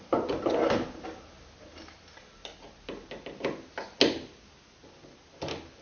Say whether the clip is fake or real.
real